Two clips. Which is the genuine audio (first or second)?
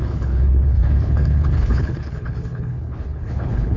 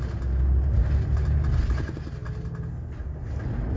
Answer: second